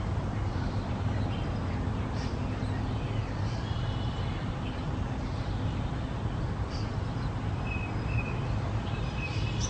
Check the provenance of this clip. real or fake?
real